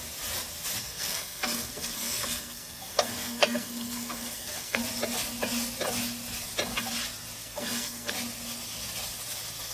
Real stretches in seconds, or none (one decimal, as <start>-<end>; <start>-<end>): 0.0-0.8; 4.8-7.4; 8.1-9.7